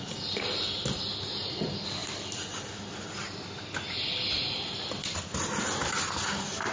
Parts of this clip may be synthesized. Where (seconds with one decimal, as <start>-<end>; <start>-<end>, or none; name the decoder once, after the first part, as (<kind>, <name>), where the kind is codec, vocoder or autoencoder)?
none